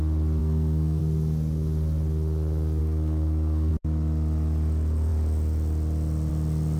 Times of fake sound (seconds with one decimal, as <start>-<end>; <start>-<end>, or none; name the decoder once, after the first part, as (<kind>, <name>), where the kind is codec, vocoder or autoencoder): 0.4-1.0 (codec, SNAC); 2.8-3.7